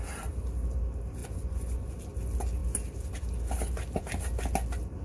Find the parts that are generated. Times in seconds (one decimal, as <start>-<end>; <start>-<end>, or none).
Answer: 1.2-2.0